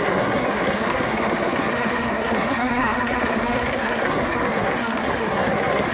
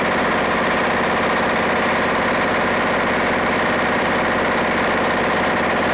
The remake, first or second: first